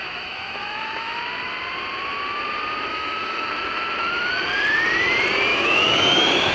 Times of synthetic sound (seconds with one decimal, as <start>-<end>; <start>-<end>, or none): 0.0-1.2; 2.9-3.5; 5.5-6.5